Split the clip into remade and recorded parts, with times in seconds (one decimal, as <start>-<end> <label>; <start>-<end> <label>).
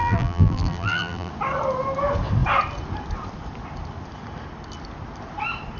0.0-1.3 remade; 1.3-5.8 recorded